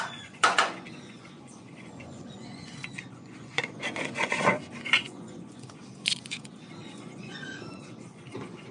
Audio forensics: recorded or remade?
remade